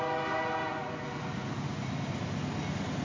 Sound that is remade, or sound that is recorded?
recorded